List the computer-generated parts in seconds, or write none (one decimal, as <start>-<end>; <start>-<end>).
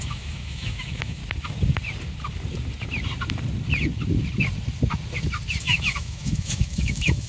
0.0-1.2; 5.6-7.3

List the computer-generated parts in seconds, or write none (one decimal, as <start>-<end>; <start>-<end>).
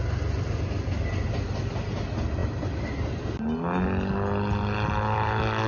2.4-3.0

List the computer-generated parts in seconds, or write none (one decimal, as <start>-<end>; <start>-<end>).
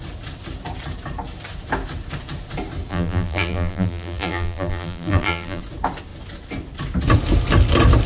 2.9-5.6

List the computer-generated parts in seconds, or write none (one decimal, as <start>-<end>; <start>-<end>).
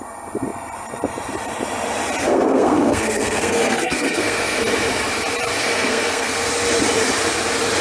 2.2-4.6; 5.6-6.5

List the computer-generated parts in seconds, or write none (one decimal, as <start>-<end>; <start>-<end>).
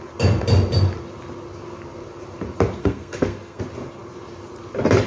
2.8-3.6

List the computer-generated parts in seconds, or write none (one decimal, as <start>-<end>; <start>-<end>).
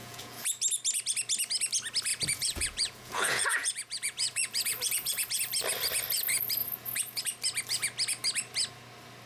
0.0-0.5; 2.1-5.4; 6.6-7.2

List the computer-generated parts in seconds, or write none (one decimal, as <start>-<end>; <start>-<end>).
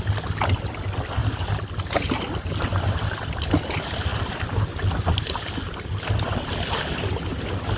none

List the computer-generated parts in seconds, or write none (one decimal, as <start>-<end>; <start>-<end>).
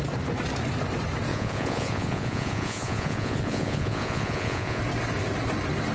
1.3-4.8